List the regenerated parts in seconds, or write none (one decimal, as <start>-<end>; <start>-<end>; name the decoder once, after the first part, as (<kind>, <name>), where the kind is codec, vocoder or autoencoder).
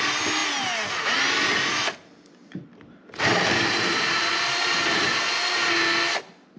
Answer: 3.0-5.7 (vocoder, BigVGAN v2)